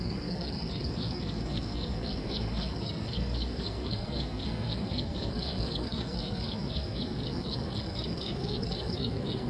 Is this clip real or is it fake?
fake